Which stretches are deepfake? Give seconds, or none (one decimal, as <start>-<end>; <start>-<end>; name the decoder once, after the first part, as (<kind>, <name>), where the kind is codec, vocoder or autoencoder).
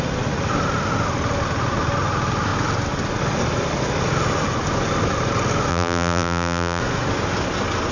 5.7-6.8 (vocoder, BigVGAN v2)